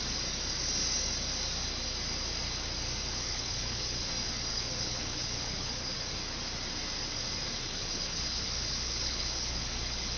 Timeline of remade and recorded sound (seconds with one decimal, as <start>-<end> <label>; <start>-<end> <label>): 0.0-3.0 recorded; 3.0-4.1 remade; 4.1-4.5 recorded; 4.5-6.1 remade; 6.1-7.5 recorded; 7.5-10.2 remade